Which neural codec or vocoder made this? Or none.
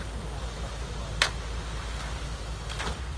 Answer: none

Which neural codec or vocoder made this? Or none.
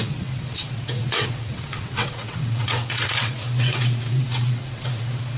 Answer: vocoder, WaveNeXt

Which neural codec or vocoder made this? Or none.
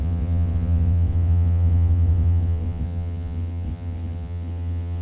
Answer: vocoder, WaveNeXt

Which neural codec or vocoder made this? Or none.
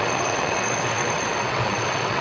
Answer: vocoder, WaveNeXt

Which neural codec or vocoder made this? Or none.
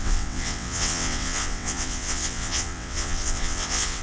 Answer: vocoder, WaveNeXt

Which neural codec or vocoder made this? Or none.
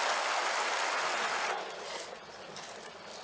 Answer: none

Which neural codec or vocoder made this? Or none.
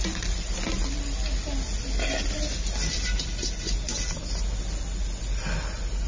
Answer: none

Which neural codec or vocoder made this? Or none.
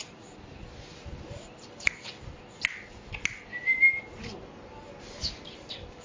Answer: none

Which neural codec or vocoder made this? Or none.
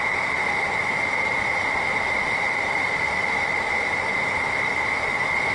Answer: none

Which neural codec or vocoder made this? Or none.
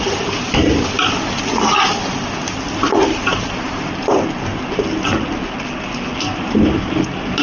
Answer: none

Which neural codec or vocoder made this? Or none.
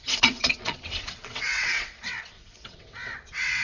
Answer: vocoder, WaveNeXt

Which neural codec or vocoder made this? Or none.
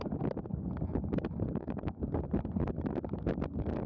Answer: none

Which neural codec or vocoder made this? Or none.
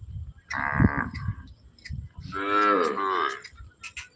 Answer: none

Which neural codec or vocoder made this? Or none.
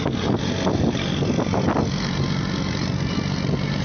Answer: none